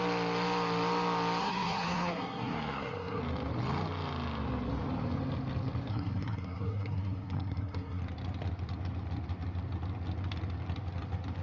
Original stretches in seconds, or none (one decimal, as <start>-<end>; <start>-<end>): 0.0-1.4; 3.2-5.9; 8.0-11.4